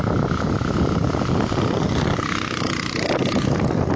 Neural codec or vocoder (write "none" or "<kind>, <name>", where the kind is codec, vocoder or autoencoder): none